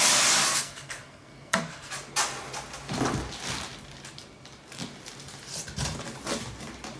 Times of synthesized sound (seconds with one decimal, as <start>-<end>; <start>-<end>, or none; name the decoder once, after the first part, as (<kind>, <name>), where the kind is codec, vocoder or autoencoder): 0.6-1.9 (codec, SNAC)